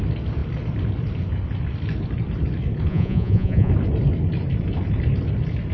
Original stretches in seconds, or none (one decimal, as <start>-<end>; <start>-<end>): 0.0-2.9; 3.7-5.7